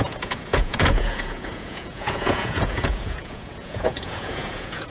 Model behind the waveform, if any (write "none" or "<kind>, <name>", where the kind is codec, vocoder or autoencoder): vocoder, Vocos